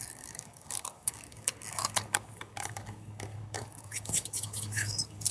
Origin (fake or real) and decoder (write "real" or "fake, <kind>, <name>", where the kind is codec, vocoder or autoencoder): fake, codec, DAC